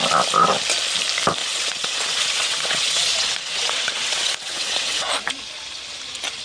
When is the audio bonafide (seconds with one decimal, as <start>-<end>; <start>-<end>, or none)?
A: 0.0-1.4; 5.1-6.4